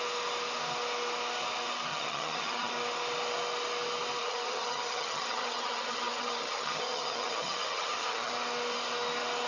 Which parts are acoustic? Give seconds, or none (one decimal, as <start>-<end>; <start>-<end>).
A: 0.0-1.9; 2.7-4.2; 8.3-9.5